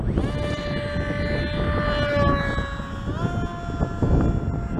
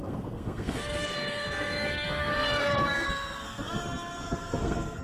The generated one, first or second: second